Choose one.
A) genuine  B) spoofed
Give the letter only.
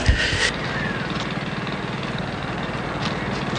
A